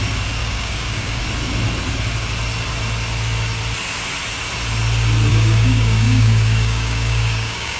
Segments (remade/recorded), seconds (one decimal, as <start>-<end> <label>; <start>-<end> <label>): 0.0-0.4 recorded; 0.4-1.2 remade; 1.2-5.3 recorded; 5.3-7.8 remade